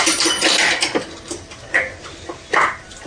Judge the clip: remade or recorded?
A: recorded